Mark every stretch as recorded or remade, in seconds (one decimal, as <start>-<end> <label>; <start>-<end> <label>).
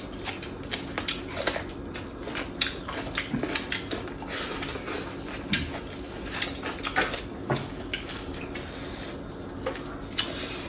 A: 0.0-7.4 recorded; 7.4-8.4 remade; 8.4-10.7 recorded